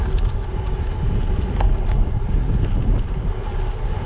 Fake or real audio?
real